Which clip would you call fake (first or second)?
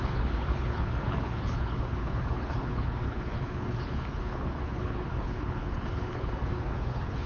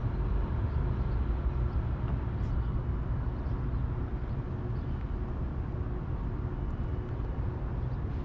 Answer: first